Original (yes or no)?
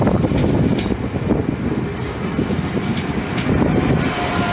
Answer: yes